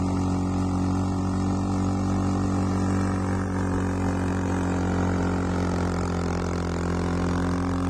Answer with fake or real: real